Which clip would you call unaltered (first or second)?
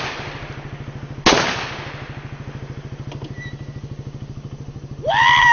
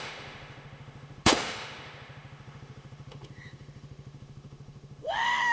first